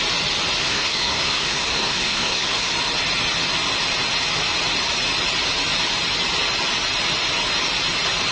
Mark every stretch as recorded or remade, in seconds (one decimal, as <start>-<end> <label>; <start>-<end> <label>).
0.0-0.6 recorded; 0.6-2.7 remade; 2.7-8.3 recorded